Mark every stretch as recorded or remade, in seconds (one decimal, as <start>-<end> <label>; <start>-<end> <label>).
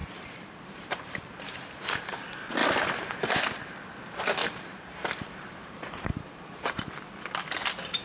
0.0-2.2 remade; 2.2-2.6 recorded; 2.6-3.3 remade; 3.3-4.4 recorded; 4.4-6.8 remade; 6.8-8.0 recorded